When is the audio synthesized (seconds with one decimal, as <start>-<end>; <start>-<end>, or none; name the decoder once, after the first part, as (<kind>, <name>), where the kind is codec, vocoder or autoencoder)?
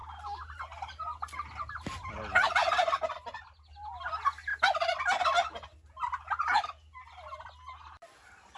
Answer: none